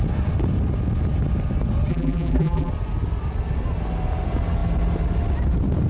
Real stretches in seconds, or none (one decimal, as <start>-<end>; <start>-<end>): 0.0-1.9; 2.7-5.9